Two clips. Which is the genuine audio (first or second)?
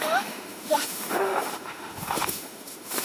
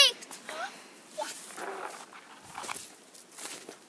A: second